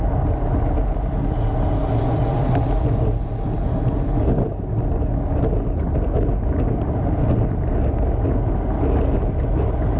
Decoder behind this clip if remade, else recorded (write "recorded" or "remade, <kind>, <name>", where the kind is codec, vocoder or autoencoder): recorded